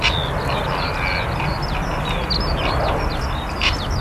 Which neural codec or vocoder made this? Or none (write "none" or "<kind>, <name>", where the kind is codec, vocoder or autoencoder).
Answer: none